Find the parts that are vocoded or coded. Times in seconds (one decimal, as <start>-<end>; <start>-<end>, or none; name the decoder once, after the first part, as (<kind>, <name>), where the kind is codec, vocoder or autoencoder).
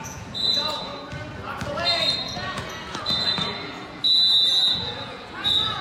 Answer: 0.0-0.9 (vocoder, Vocos); 2.2-4.0; 4.7-5.8